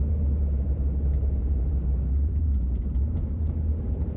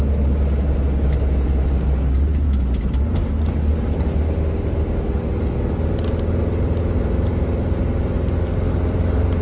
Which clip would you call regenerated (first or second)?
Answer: first